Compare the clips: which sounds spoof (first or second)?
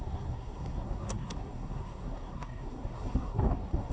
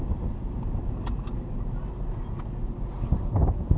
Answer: first